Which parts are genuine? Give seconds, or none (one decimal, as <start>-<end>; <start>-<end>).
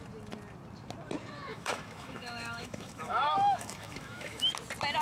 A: 0.0-1.5; 4.5-5.0